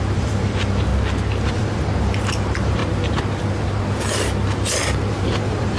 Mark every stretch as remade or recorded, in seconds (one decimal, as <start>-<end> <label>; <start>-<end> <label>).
0.0-0.9 remade; 0.9-1.6 recorded; 1.6-2.8 remade; 2.8-5.1 recorded; 5.1-5.8 remade